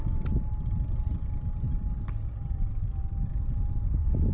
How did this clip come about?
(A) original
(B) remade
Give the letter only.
A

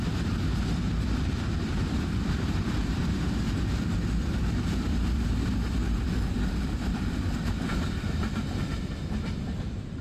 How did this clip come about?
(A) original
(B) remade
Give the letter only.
B